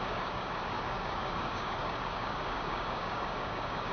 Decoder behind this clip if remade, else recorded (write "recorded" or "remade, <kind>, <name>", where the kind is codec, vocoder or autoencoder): remade, codec, DAC